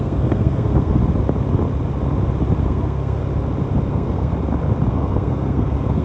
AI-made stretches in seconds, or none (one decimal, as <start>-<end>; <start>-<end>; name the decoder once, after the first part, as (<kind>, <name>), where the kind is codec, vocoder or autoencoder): 0.0-1.0 (codec, SNAC); 2.6-3.2; 3.9-4.3; 4.9-6.0